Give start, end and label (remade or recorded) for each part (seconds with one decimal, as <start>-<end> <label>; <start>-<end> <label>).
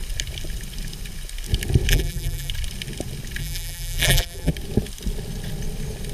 0.0-1.9 recorded; 1.9-2.5 remade; 2.5-3.4 recorded; 3.4-4.5 remade; 4.5-6.1 recorded